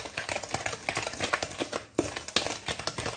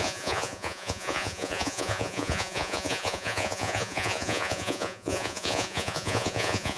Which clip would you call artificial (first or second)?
second